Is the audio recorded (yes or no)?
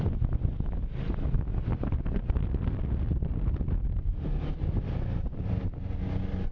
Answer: yes